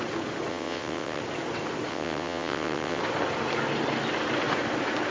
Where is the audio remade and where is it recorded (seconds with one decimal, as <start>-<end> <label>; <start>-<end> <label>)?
0.0-0.5 recorded; 0.5-1.2 remade; 1.2-1.9 recorded; 1.9-3.0 remade; 3.0-5.1 recorded